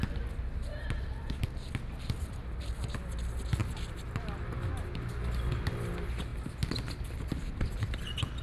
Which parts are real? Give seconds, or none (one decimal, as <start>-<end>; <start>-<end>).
0.0-8.4